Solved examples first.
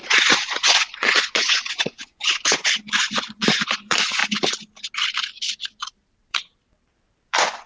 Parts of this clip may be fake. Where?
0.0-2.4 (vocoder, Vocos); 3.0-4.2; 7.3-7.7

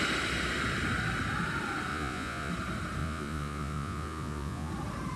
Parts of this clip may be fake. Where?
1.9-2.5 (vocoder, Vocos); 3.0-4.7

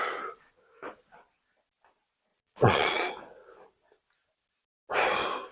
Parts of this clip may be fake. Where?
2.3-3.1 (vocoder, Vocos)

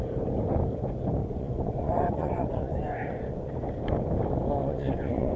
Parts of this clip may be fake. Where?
1.2-3.5 (vocoder, Vocos); 4.6-5.4